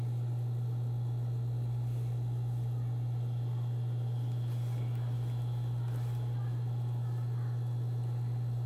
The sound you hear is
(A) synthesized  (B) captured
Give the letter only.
B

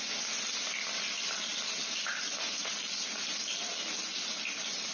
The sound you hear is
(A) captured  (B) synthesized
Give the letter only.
A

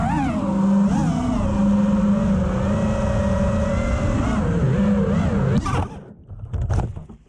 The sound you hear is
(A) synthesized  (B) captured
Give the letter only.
B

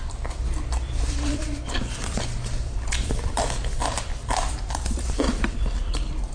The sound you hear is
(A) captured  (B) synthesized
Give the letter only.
B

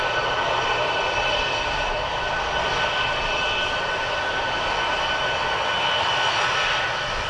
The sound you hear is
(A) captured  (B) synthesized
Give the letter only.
A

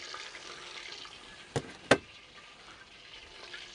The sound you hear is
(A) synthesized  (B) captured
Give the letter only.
B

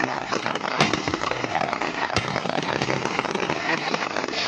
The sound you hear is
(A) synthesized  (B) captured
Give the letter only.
A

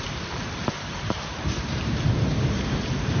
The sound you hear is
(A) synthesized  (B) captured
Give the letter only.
A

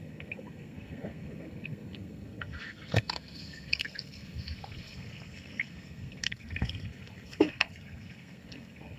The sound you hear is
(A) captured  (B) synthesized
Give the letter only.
B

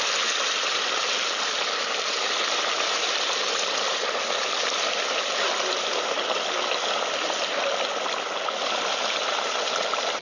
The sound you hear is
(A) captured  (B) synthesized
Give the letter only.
A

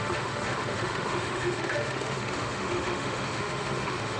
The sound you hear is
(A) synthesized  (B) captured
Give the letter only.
A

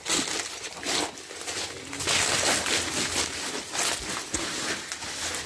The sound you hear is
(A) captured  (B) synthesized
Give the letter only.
A